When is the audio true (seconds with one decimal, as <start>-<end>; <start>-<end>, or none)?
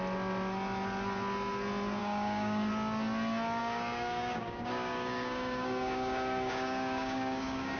0.0-2.0; 2.7-3.6